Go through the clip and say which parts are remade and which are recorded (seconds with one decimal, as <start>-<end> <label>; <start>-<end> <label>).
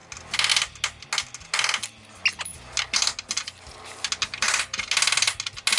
0.0-5.8 recorded